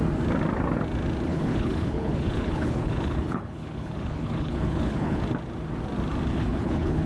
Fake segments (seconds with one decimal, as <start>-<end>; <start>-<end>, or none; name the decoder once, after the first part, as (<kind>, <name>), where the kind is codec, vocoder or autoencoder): 1.3-5.2 (codec, HILCodec); 6.3-7.1